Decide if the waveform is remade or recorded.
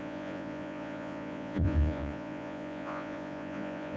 remade